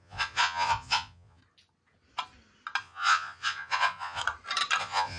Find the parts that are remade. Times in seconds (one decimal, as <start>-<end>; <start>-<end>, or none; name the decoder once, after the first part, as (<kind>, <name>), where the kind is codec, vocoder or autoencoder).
0.0-1.4 (vocoder, Vocos); 2.8-4.2; 4.8-5.2